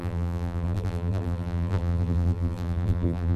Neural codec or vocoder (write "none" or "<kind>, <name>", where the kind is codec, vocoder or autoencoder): vocoder, BigVGAN v2